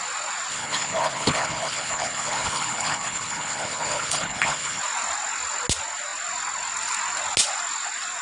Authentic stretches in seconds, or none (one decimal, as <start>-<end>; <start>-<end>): 0.0-0.5; 4.8-8.2